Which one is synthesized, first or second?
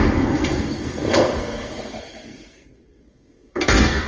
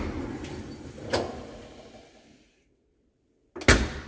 first